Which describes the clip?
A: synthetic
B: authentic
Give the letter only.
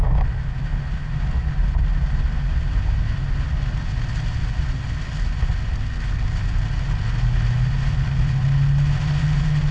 B